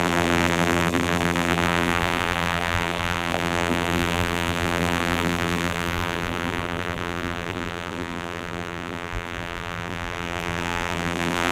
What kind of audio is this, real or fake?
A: fake